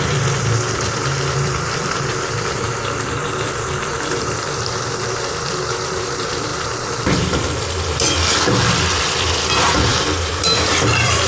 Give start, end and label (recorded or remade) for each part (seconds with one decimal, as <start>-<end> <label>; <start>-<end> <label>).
0.0-6.5 remade; 6.5-9.5 recorded; 9.5-11.3 remade